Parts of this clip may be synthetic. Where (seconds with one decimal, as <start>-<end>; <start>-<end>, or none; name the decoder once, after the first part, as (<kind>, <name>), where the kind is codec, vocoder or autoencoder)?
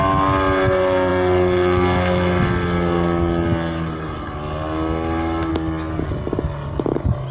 none